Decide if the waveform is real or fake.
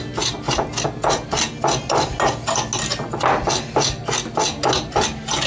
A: real